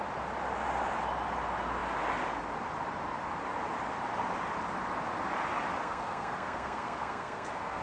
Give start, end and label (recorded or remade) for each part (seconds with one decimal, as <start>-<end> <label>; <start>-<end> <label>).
0.0-5.8 recorded; 5.8-7.8 remade